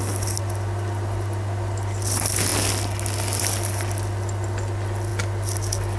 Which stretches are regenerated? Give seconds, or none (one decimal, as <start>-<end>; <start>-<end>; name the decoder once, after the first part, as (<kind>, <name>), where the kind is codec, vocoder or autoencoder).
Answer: none